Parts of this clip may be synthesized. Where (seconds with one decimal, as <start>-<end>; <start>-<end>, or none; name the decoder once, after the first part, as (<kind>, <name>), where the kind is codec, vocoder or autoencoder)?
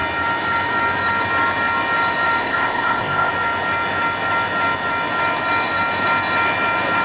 2.4-3.3 (codec, ZipCodec)